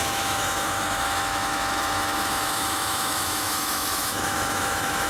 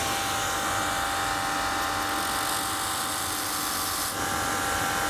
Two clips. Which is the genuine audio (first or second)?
second